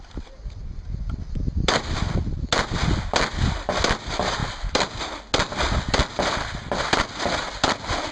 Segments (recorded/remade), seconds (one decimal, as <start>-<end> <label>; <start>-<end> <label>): 0.0-8.1 recorded